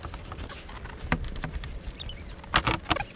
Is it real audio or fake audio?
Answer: real